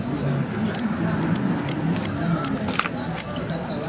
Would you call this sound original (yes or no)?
yes